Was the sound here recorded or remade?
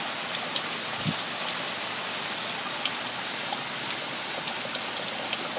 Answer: recorded